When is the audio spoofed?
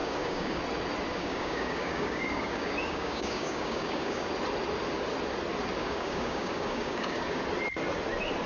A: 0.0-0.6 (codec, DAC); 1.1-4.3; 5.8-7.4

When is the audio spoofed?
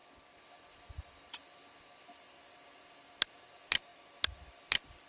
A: none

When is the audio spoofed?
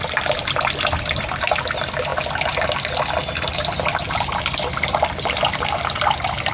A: none